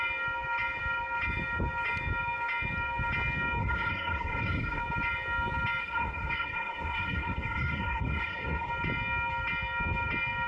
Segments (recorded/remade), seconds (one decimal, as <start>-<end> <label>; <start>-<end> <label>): 0.0-3.6 recorded; 3.6-4.8 remade; 4.8-5.8 recorded; 5.8-8.7 remade; 8.7-10.5 recorded